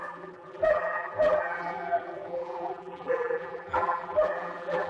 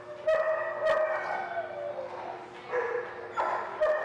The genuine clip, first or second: second